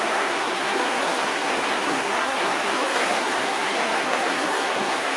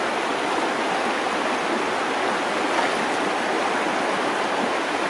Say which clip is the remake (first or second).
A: first